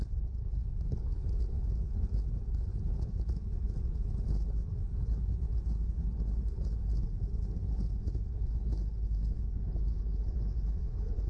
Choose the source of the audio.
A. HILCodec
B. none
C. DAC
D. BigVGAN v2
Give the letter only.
A